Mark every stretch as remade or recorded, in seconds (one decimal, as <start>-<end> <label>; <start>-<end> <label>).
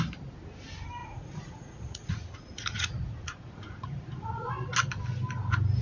0.0-1.0 recorded; 1.0-4.5 remade; 4.5-5.8 recorded